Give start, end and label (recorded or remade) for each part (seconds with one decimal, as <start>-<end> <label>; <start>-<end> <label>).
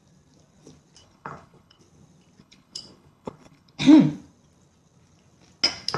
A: 0.0-1.0 recorded; 1.0-1.8 remade; 1.8-2.4 recorded; 2.4-3.8 remade; 3.8-6.0 recorded